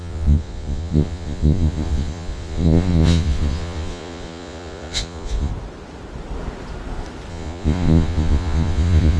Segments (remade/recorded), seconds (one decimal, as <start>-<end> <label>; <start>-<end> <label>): 0.0-5.5 remade; 5.5-7.3 recorded; 7.3-9.2 remade